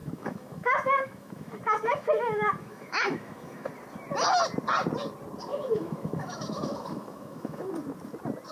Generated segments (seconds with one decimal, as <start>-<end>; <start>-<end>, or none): 0.0-3.7; 5.5-7.7